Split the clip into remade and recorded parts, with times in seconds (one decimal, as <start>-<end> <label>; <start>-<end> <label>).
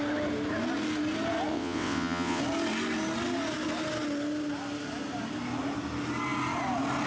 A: 0.0-1.5 recorded; 1.5-2.4 remade; 2.4-7.1 recorded